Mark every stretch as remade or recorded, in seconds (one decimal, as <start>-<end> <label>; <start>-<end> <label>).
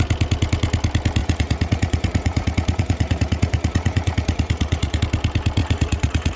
0.0-1.2 recorded; 1.2-5.0 remade; 5.0-5.6 recorded; 5.6-6.4 remade